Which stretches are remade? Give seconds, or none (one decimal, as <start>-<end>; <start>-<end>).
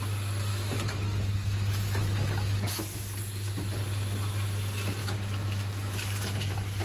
0.5-2.7; 5.0-6.8